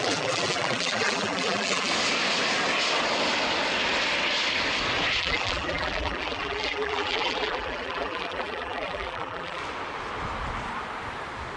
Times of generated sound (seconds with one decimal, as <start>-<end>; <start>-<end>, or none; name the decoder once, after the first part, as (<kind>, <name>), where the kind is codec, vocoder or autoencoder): 0.0-1.9 (vocoder, BigVGAN v2); 5.2-9.6